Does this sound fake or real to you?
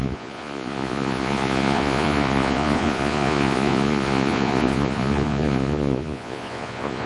fake